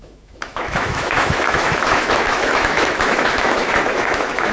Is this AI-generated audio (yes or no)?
yes